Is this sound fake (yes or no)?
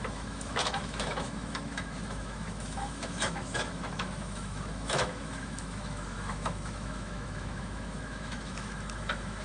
yes